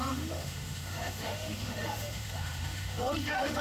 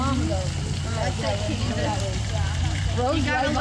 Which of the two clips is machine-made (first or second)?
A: first